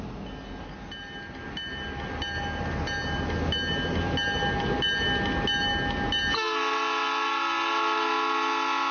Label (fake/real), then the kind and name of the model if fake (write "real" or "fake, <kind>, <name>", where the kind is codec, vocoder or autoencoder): real